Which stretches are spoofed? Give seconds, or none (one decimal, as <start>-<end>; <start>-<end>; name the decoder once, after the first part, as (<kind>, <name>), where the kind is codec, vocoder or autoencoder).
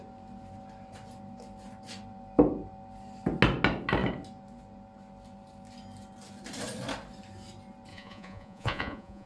7.9-9.3 (vocoder, Vocos)